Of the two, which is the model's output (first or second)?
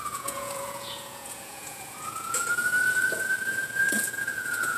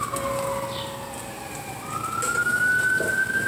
first